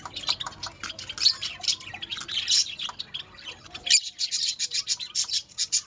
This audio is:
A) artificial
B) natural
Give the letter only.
B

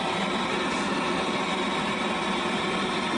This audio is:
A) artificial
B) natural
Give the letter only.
B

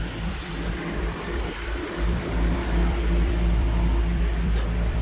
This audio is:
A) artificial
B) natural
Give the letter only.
A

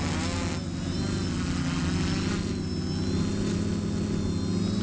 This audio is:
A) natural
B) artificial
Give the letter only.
A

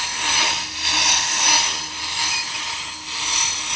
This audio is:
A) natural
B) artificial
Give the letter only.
A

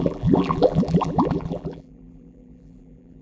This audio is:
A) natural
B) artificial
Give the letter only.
B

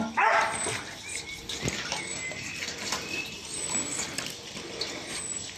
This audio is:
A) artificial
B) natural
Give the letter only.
B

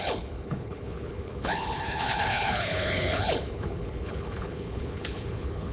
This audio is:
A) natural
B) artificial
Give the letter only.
B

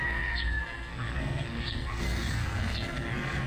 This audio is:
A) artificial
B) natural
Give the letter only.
A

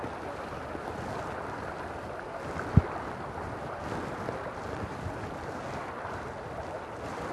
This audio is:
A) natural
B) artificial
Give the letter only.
A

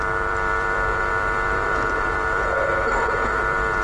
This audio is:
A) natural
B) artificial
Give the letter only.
B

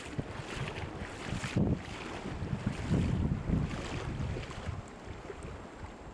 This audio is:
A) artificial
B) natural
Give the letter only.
B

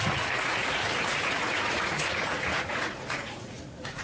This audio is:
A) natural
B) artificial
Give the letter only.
B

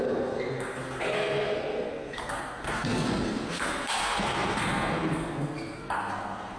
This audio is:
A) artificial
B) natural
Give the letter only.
A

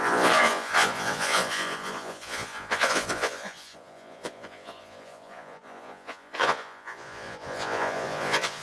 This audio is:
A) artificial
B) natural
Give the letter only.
A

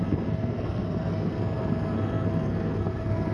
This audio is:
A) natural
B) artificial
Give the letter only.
B